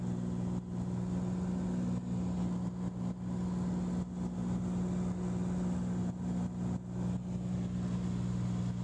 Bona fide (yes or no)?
yes